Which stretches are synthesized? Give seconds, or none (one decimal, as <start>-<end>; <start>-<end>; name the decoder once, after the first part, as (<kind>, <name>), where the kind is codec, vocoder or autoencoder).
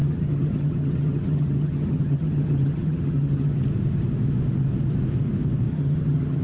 0.0-3.6 (vocoder, HiFi-GAN); 5.7-6.4